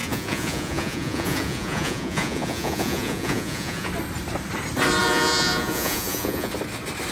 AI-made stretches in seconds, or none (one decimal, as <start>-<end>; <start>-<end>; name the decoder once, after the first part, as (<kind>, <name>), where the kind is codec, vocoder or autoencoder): 0.0-3.9 (vocoder, Vocos); 5.0-6.5